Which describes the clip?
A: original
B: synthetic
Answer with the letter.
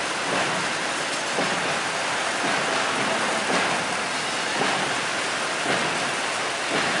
A